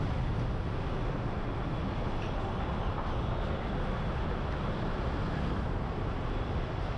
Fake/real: real